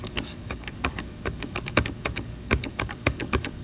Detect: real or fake fake